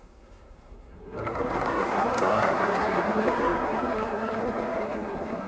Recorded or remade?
remade